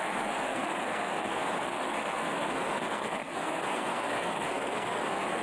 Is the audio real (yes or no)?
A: no